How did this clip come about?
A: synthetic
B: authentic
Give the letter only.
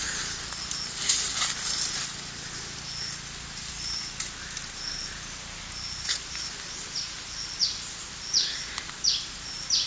B